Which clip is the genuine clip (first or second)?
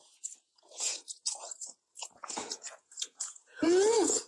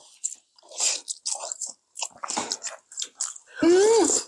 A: second